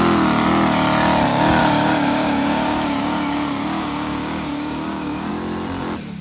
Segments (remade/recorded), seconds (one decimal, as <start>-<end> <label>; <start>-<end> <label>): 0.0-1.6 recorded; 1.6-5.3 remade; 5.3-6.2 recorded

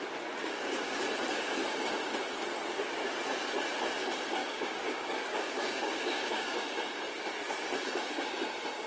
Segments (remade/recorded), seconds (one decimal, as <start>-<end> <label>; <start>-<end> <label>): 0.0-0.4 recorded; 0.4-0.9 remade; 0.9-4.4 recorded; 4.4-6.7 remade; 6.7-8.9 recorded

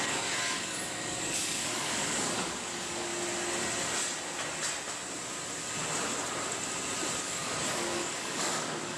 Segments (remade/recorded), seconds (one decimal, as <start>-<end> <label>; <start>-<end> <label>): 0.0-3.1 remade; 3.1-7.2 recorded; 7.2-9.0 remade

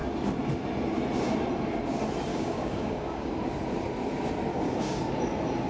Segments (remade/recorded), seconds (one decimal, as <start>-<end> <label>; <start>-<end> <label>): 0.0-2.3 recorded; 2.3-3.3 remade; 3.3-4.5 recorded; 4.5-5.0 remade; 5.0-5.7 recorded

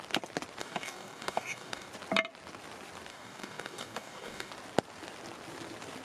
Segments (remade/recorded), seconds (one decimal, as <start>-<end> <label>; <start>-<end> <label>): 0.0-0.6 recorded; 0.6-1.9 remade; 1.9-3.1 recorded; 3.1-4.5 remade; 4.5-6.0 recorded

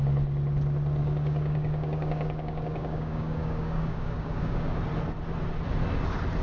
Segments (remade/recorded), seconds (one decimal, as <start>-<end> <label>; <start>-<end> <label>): 0.0-1.0 recorded; 1.0-4.8 remade; 4.8-6.4 recorded

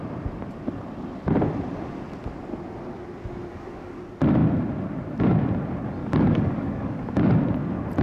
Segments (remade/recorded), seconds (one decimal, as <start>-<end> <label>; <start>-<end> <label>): 0.0-3.5 recorded; 3.5-4.0 remade; 4.0-6.0 recorded; 6.0-7.0 remade; 7.0-8.0 recorded